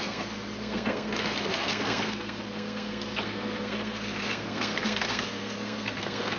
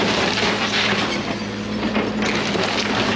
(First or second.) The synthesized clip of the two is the first